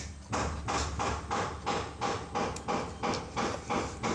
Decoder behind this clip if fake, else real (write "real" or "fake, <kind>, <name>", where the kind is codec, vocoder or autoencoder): real